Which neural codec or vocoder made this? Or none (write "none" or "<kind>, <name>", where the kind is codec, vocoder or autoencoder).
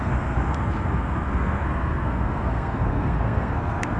codec, SNAC